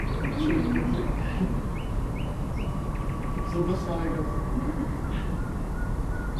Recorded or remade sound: remade